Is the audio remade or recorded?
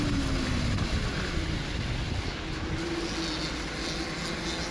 recorded